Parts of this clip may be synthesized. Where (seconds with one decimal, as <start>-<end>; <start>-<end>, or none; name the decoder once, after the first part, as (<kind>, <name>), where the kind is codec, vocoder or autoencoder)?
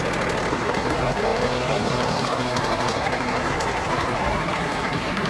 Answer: 0.5-5.3 (codec, SNAC)